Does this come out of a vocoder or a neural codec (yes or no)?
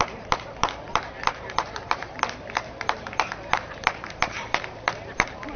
yes